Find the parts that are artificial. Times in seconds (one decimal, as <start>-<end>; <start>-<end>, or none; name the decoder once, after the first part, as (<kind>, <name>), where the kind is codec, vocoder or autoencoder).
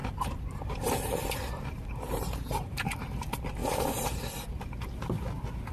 0.0-2.9 (vocoder, BigVGAN v2); 3.6-4.2